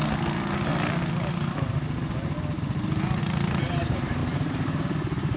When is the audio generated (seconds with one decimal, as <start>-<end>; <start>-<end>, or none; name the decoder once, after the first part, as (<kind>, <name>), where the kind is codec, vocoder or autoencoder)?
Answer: 3.2-5.4 (vocoder, BigVGAN v2)